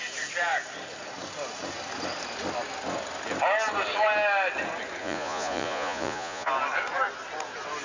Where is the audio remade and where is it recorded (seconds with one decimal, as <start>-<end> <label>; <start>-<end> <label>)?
0.0-5.0 recorded; 5.0-6.5 remade; 6.5-7.8 recorded